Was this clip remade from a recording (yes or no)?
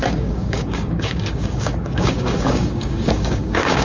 yes